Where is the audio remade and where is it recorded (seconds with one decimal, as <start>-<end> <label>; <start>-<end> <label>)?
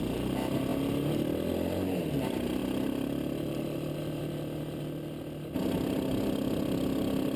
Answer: 0.0-7.4 recorded